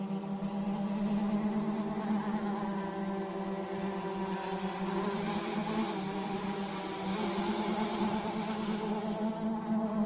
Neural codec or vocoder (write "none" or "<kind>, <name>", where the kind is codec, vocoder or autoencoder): none